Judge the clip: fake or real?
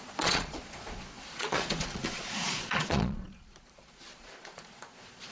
fake